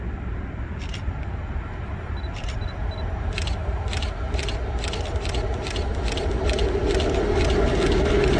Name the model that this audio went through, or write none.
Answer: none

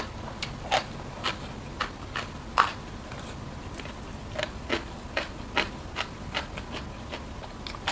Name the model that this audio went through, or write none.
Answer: none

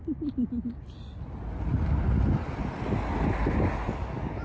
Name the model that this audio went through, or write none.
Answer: none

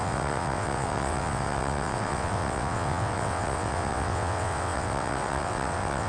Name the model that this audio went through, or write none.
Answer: vocoder, WaveNeXt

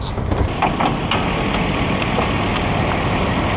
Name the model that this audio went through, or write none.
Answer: none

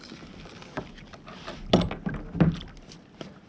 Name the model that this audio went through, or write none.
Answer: none